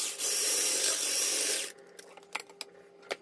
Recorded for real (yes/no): yes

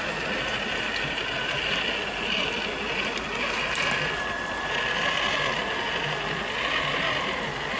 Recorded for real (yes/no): yes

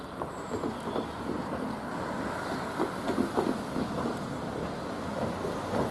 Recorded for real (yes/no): yes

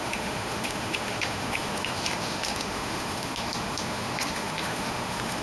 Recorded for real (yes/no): no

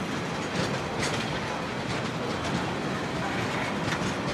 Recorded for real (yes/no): yes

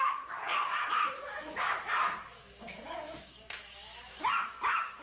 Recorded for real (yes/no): no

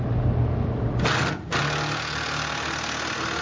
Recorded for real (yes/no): yes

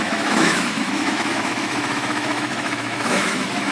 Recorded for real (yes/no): no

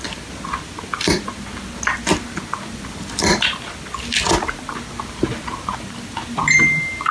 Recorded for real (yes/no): yes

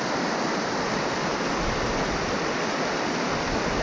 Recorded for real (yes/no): yes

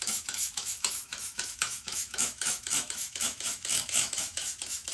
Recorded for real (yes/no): no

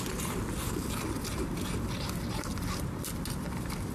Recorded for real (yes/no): yes